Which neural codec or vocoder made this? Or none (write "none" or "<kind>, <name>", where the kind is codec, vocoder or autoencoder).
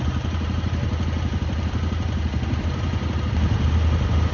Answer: none